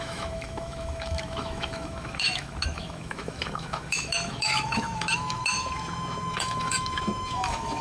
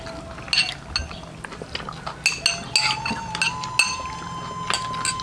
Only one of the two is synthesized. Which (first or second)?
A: first